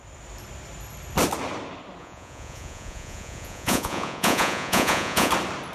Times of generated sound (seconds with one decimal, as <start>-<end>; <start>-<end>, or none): 2.0-5.3